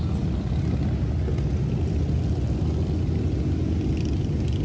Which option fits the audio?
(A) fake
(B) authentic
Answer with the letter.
B